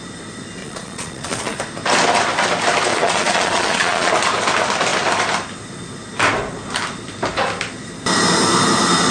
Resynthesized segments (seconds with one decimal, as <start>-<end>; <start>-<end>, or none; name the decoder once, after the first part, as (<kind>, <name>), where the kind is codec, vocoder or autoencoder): 0.6-1.6 (vocoder, Vocos); 2.9-4.1